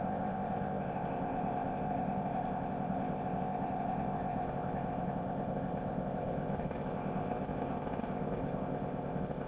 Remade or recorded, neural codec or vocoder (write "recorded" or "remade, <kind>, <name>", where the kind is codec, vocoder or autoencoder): remade, codec, ZipCodec